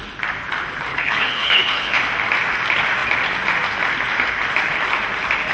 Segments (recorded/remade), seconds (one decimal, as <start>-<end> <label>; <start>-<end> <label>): 0.0-0.9 recorded; 0.9-2.0 remade; 2.0-5.5 recorded